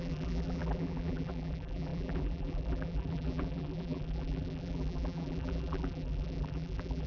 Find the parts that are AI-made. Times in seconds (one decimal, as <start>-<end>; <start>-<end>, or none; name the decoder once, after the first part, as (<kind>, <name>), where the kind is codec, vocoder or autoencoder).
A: 0.0-7.1 (vocoder, BigVGAN v2)